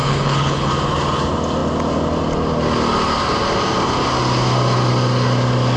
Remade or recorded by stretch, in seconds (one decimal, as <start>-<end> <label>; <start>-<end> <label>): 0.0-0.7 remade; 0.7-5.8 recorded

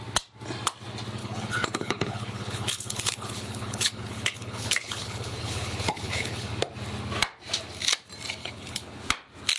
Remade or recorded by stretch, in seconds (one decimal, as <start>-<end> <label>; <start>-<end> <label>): 0.0-1.2 recorded; 1.2-6.5 remade; 6.5-8.4 recorded; 8.4-9.0 remade; 9.0-9.6 recorded

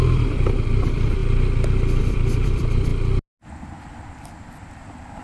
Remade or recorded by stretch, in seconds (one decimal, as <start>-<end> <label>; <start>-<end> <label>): 0.0-1.2 remade; 1.2-2.0 recorded; 2.0-2.9 remade; 2.9-4.7 recorded; 4.7-5.2 remade

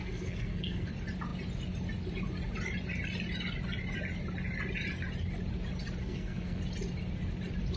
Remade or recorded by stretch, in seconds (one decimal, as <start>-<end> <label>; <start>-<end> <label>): 0.0-0.9 remade; 0.9-6.0 recorded; 6.0-6.6 remade; 6.6-7.8 recorded